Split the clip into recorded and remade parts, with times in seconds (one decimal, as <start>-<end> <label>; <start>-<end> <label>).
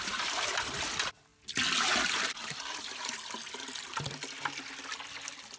0.0-5.6 recorded